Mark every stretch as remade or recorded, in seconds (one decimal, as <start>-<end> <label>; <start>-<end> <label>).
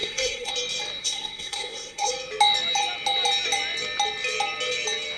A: 0.0-0.5 remade; 0.5-1.0 recorded; 1.0-2.1 remade; 2.1-5.2 recorded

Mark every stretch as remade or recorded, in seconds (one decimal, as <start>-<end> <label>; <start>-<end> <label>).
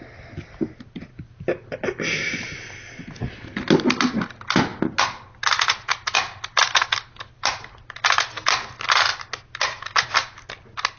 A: 0.0-11.0 recorded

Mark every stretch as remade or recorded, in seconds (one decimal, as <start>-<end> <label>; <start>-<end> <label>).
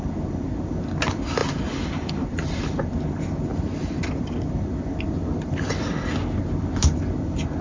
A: 0.0-3.5 recorded; 3.5-4.0 remade; 4.0-5.3 recorded; 5.3-5.8 remade; 5.8-7.6 recorded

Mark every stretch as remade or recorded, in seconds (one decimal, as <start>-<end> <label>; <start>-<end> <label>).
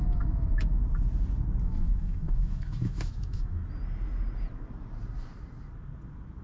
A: 0.0-0.8 remade; 0.8-1.6 recorded; 1.6-3.6 remade; 3.6-6.4 recorded